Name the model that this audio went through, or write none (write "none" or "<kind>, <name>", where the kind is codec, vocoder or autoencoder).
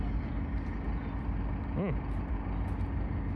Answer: none